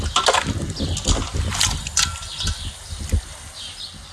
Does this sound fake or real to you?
real